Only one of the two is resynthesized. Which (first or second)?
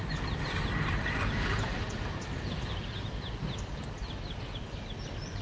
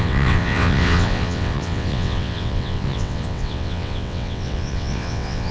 second